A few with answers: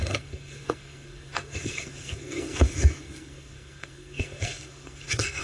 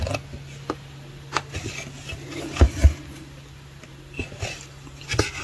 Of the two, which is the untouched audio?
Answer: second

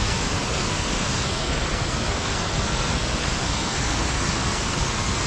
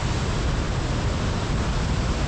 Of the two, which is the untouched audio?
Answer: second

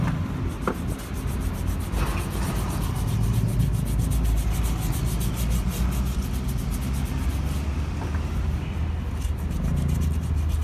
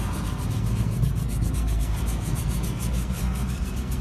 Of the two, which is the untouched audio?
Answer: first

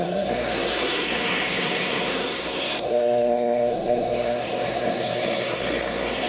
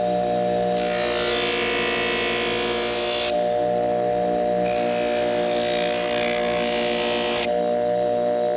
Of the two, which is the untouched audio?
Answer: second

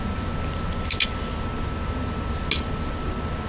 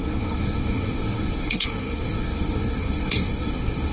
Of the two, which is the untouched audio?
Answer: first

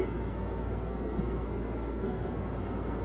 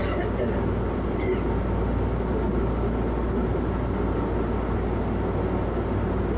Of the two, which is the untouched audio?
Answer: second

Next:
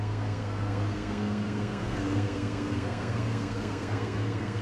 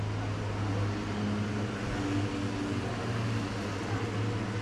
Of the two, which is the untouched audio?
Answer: second